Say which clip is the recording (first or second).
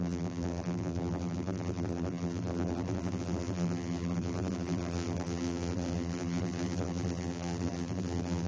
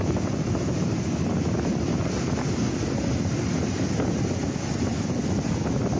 second